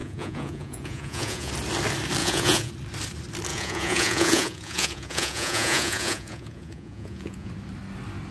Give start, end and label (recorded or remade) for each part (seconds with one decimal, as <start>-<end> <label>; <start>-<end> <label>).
0.0-1.5 remade; 1.5-2.2 recorded; 2.2-2.7 remade; 2.7-3.5 recorded; 3.5-7.5 remade; 7.5-8.3 recorded